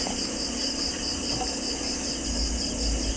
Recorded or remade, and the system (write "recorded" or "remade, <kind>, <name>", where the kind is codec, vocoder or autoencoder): recorded